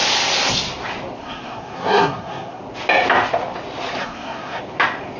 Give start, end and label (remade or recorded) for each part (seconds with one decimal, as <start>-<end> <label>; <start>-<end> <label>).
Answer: 0.0-1.2 recorded; 1.2-2.6 remade; 2.6-4.0 recorded; 4.0-4.6 remade; 4.6-5.2 recorded